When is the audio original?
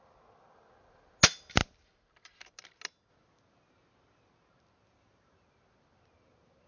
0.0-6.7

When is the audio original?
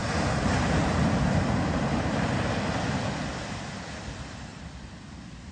3.3-4.5; 5.0-5.5